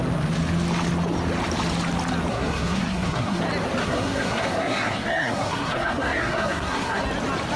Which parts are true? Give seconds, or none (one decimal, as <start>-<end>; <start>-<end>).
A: 0.0-2.3; 3.4-3.8; 7.0-7.6